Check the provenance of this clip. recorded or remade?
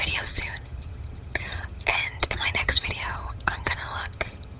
remade